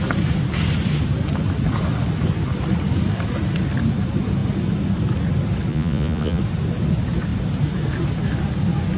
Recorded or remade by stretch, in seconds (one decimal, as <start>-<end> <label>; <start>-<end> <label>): 0.0-5.7 recorded; 5.7-6.4 remade; 6.4-9.0 recorded